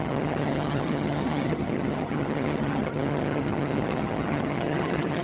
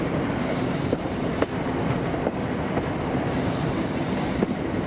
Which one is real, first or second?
second